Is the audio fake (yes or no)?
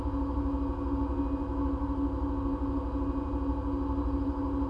no